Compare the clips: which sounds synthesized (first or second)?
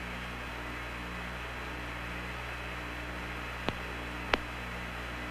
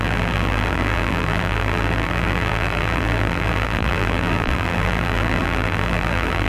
second